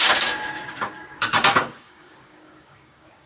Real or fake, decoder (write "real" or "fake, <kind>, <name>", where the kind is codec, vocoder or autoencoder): fake, codec, DAC